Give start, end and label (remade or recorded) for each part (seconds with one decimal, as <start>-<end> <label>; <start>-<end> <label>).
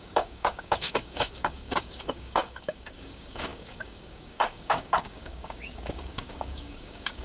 0.0-7.2 remade